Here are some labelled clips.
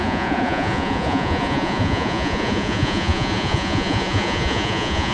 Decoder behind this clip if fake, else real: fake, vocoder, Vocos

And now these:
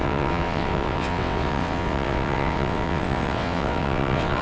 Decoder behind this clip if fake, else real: fake, vocoder, WaveNeXt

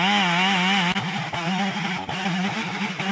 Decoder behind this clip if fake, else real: real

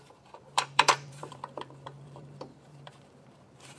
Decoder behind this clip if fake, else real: fake, vocoder, BigVGAN v2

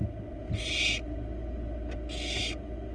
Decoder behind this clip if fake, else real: real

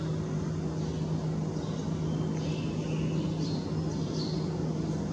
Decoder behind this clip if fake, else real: real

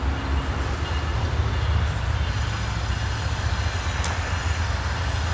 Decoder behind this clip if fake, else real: real